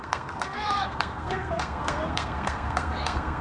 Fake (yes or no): yes